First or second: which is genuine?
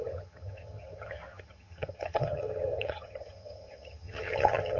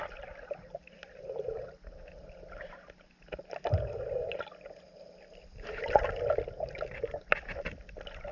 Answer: second